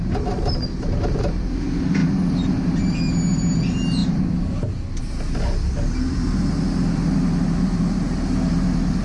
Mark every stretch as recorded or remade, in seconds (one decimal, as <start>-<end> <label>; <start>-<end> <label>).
0.0-9.0 recorded